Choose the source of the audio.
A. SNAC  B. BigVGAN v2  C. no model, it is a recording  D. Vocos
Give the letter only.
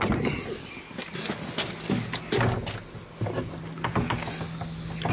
C